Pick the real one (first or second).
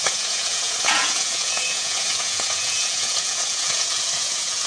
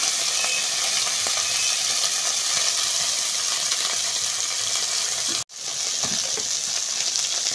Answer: second